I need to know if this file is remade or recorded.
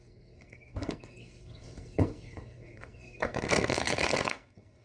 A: remade